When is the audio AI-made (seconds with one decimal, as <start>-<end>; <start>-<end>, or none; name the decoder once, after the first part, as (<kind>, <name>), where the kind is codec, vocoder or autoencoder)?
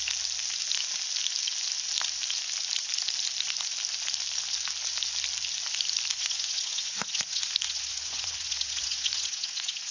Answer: 6.1-9.9 (vocoder, Vocos)